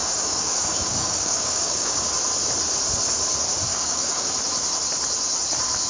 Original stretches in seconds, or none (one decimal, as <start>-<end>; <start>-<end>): 2.0-3.7; 4.3-5.9